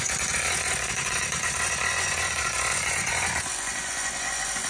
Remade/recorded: remade